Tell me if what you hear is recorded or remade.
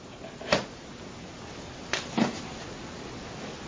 recorded